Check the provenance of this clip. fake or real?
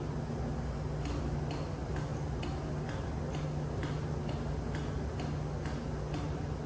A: real